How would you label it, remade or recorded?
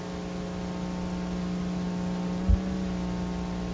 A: recorded